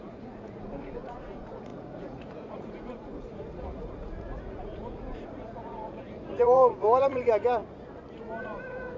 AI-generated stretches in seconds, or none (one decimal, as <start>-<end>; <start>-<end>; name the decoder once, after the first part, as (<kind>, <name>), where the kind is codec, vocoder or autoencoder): 0.0-7.6 (vocoder, Vocos); 8.4-9.0